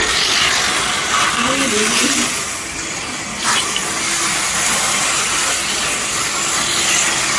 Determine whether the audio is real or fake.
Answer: real